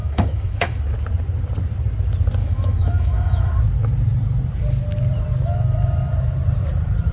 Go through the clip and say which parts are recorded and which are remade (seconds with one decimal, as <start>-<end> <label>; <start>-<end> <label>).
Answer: 0.0-0.8 remade; 0.8-2.4 recorded; 2.4-3.5 remade; 3.5-7.1 recorded